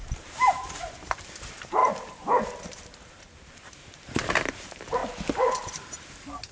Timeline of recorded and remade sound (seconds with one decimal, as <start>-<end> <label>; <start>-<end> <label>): 0.0-5.0 remade; 5.0-5.7 recorded; 5.7-6.5 remade